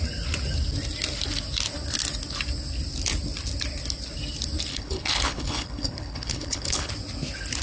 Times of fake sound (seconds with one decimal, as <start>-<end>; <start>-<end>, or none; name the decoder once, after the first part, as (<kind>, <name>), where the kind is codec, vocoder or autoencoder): 4.7-6.9 (codec, HILCodec)